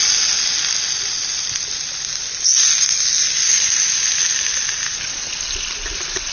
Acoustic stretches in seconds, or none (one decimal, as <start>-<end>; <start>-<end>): 0.0-6.3